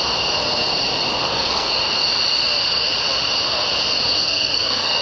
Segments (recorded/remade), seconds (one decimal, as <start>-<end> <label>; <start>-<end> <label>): 0.0-1.2 recorded; 1.2-1.7 remade; 1.7-4.2 recorded; 4.2-5.0 remade